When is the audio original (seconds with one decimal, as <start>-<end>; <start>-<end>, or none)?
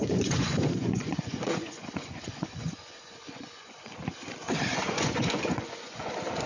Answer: 3.9-4.7; 6.1-6.5